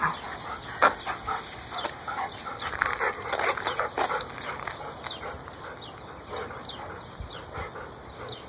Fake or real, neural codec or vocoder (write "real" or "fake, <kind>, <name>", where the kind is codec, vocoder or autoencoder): real